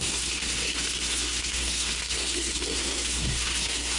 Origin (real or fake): fake